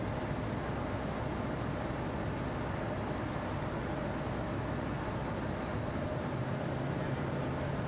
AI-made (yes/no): no